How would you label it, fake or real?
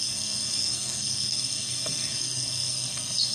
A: fake